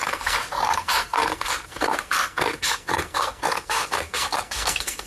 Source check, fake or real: fake